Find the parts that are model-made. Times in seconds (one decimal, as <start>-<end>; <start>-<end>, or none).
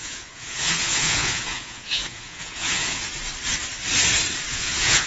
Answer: 0.0-3.0; 4.5-5.1